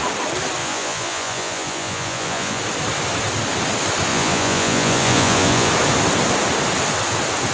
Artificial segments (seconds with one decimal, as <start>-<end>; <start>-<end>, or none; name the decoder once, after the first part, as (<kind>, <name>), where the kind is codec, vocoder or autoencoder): 0.6-2.6 (vocoder, Vocos); 4.1-5.7